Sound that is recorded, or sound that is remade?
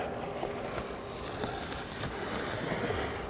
recorded